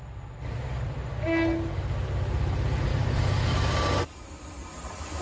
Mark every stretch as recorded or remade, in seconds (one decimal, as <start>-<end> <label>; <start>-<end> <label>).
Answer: 0.0-5.2 recorded